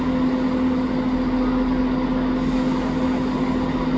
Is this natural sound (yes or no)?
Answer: yes